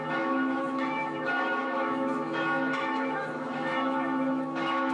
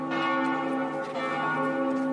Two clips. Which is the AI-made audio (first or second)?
first